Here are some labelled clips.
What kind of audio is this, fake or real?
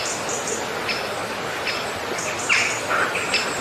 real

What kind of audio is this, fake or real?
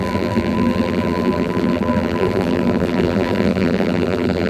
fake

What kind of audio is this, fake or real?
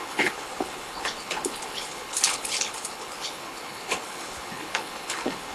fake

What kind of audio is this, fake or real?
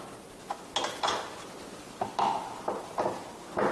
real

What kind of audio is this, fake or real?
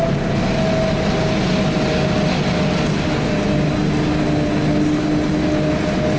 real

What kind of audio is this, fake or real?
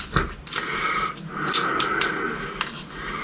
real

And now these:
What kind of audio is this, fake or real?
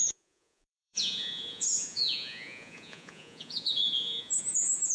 fake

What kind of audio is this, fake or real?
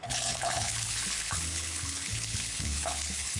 fake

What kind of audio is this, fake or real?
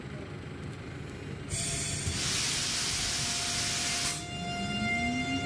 real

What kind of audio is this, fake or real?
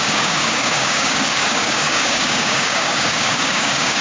fake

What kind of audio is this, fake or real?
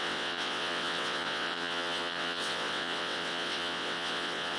fake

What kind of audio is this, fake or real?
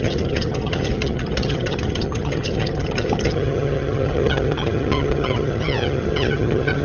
fake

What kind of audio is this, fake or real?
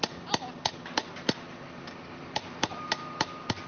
real